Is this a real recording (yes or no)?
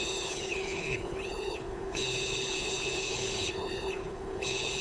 no